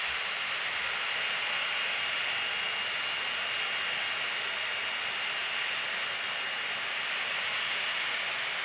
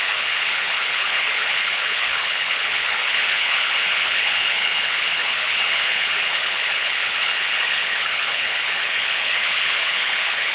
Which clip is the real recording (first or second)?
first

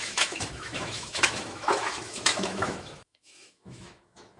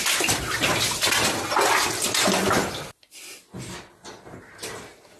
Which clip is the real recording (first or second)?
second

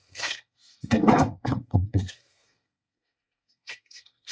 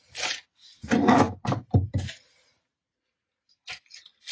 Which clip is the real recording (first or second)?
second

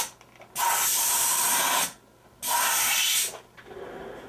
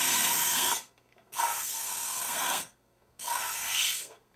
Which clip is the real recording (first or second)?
first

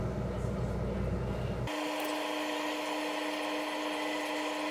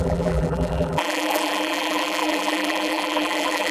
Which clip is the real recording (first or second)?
first